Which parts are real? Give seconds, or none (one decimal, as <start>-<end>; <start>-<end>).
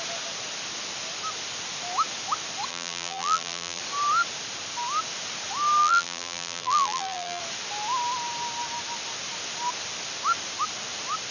0.0-2.7; 3.8-5.8; 7.4-11.3